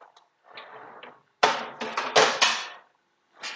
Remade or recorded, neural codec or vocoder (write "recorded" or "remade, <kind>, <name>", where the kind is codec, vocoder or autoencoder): recorded